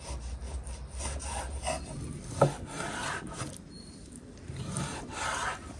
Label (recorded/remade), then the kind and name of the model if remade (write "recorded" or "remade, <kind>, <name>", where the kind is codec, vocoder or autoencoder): recorded